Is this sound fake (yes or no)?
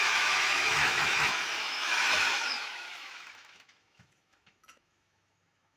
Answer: yes